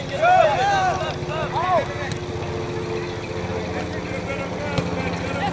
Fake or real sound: real